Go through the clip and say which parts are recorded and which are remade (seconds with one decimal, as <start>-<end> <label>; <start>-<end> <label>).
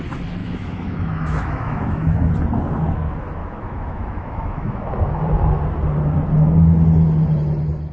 0.0-0.4 recorded; 0.4-2.3 remade; 2.3-3.4 recorded; 3.4-4.9 remade; 4.9-7.9 recorded